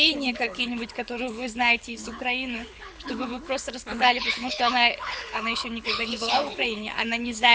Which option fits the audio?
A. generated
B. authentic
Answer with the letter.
A